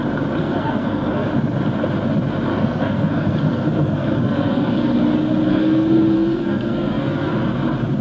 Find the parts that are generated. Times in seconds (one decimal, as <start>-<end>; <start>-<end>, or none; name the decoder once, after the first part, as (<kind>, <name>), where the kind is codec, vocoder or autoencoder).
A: 0.4-1.3 (codec, SNAC); 2.5-4.9; 5.5-7.3